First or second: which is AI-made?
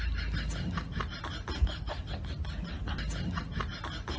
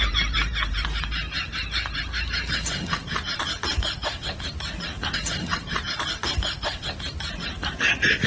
second